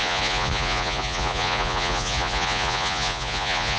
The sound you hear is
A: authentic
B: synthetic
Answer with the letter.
B